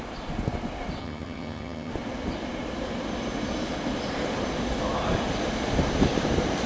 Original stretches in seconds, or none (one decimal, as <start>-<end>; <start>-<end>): 0.0-1.0; 1.9-6.7